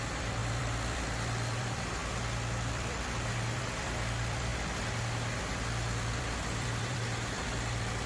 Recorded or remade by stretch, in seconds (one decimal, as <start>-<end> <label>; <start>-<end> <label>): 0.0-2.0 remade; 2.0-2.7 recorded; 2.7-4.5 remade; 4.5-5.4 recorded; 5.4-8.1 remade